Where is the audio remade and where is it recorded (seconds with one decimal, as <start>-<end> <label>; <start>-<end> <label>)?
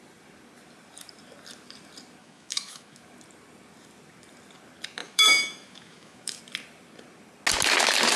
0.0-2.2 recorded; 2.2-3.0 remade; 3.0-5.0 recorded; 5.0-6.4 remade; 6.4-8.2 recorded